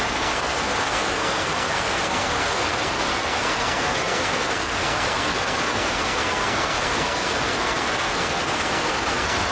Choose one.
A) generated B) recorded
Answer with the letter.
A